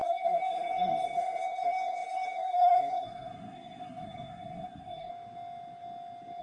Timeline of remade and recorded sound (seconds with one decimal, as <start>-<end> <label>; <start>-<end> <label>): 0.0-5.1 remade; 5.1-6.4 recorded